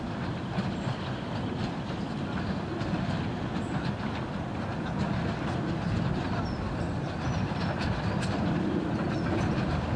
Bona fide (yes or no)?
yes